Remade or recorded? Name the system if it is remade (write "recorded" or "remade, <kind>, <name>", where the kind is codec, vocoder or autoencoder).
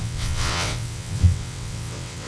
remade, vocoder, WaveNeXt